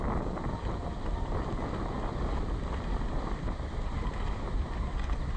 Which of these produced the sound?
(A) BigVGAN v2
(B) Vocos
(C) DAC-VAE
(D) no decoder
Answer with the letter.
A